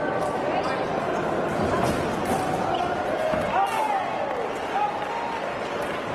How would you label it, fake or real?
real